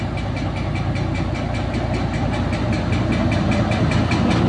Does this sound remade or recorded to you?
recorded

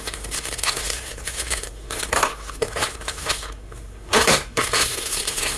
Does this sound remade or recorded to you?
remade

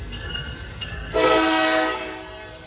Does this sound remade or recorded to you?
remade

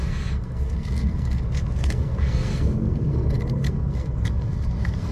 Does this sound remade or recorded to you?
remade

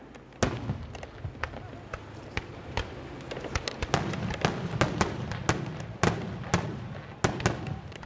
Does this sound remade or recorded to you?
recorded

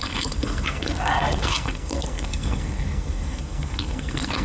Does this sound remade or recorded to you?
remade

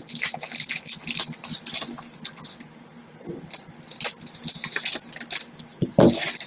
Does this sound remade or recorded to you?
recorded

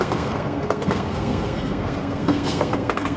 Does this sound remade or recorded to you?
remade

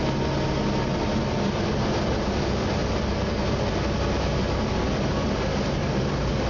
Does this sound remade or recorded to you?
recorded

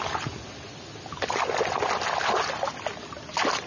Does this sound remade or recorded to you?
recorded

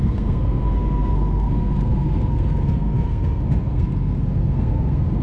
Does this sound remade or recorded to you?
remade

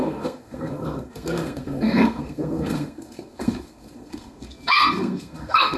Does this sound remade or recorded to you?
remade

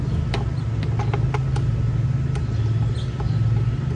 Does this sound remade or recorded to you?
recorded